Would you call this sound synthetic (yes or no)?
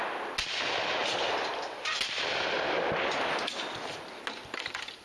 no